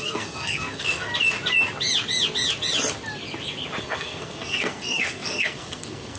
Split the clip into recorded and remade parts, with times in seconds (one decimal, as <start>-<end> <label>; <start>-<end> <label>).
0.0-1.1 remade; 1.1-3.8 recorded; 3.8-6.2 remade